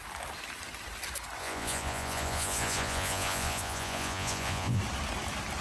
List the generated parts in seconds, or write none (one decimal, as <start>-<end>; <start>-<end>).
1.4-4.8